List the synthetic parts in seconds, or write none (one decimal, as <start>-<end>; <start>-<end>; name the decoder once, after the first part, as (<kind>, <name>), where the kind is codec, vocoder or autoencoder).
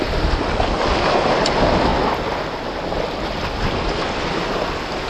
none